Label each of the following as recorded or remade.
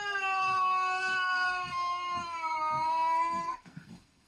remade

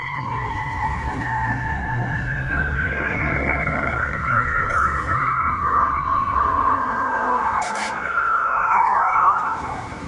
remade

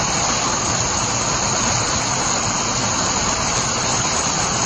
recorded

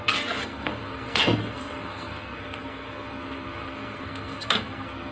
remade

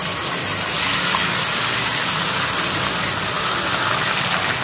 recorded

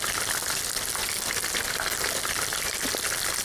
recorded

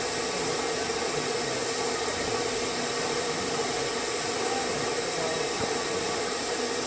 recorded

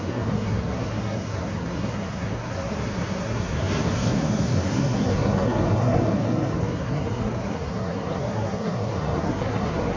remade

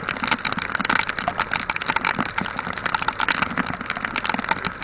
recorded